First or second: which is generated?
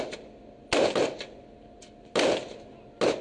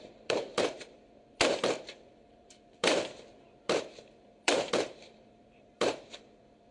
second